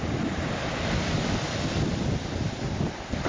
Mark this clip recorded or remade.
recorded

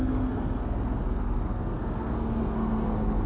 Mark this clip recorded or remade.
remade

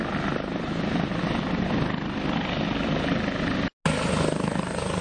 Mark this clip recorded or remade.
recorded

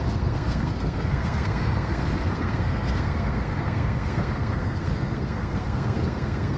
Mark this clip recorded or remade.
remade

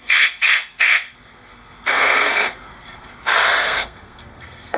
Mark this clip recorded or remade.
remade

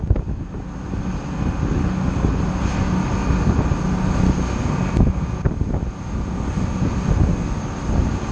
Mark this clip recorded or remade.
recorded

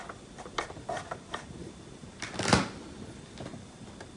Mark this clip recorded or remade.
recorded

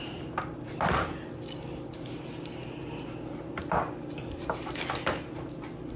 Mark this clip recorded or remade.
recorded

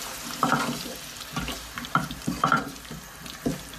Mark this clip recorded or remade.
recorded